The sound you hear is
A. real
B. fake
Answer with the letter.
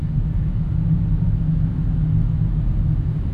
A